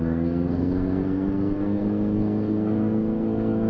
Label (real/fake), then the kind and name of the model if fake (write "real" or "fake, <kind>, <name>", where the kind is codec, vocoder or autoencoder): fake, codec, SNAC